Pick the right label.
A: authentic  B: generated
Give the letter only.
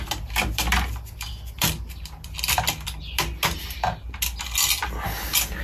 A